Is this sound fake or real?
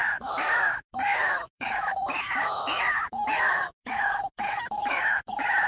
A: fake